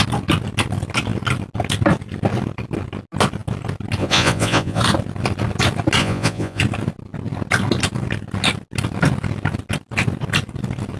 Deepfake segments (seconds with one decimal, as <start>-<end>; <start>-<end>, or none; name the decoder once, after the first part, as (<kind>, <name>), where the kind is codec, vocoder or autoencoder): 4.0-4.8 (vocoder, Vocos); 6.0-6.6